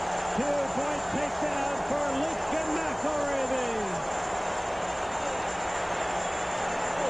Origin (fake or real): real